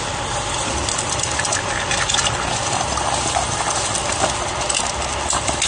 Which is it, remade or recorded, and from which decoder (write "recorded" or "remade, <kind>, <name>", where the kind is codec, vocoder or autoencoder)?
recorded